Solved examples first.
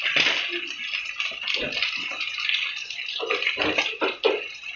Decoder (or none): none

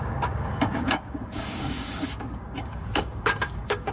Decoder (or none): codec, DAC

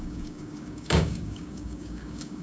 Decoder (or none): codec, DAC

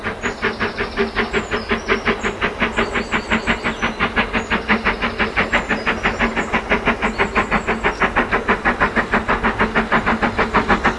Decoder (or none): none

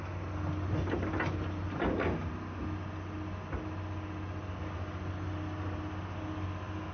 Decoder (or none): none